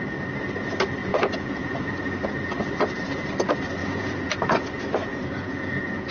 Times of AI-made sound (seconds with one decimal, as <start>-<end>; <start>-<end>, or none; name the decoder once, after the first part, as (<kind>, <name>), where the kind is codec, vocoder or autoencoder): 1.0-2.2 (vocoder, Vocos); 3.8-4.5; 5.1-6.1